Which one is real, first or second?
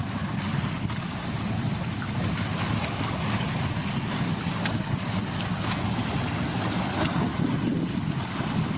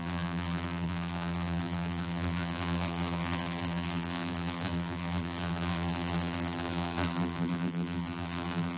first